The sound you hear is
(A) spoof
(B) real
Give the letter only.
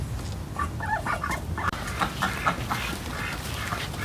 B